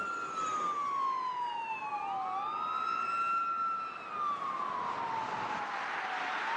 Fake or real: real